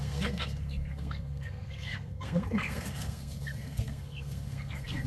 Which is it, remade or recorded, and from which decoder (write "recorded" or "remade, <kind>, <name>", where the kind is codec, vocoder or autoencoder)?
remade, codec, SNAC